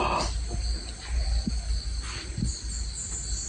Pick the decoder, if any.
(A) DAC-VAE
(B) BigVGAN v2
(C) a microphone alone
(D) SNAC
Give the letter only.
C